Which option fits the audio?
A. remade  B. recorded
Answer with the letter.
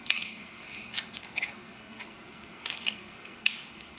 A